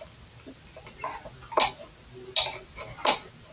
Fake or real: real